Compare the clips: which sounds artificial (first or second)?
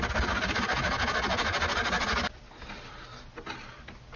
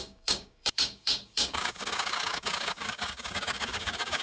second